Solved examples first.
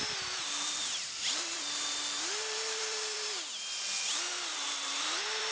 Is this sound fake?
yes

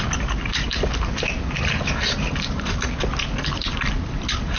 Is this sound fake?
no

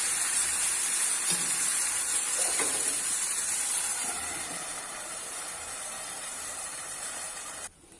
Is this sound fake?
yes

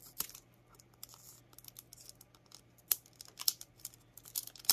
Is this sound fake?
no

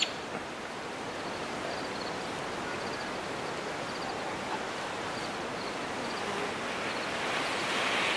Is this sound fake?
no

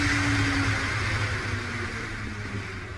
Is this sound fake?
no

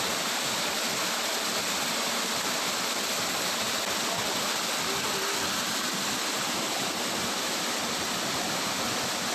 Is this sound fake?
no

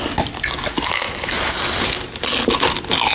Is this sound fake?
no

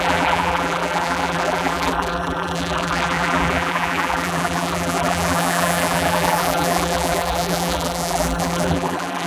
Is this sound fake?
yes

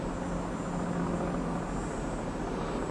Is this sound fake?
no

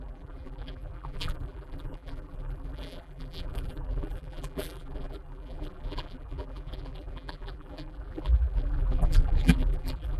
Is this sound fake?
yes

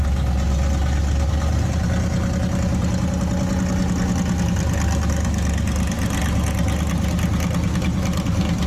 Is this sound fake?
no